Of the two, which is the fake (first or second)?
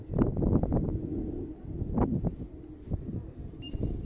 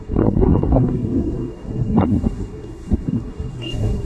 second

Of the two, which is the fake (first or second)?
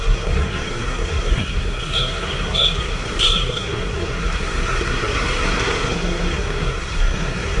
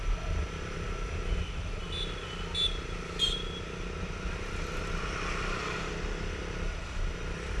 first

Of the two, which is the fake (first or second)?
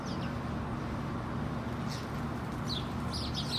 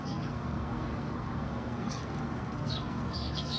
second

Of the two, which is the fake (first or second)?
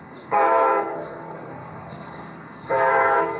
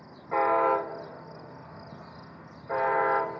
first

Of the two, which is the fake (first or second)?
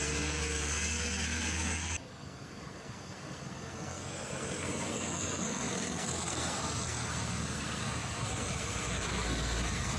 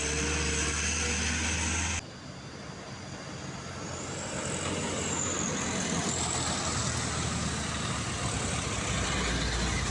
first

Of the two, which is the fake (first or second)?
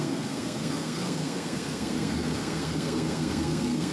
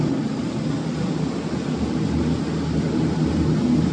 first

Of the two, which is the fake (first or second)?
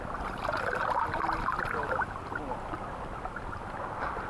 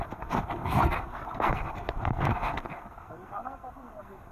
second